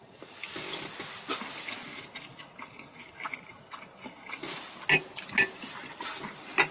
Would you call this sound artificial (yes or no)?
no